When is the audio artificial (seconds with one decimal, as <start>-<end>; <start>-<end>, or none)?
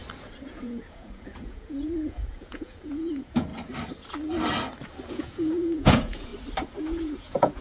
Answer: 0.5-3.5; 5.1-6.3; 6.8-7.6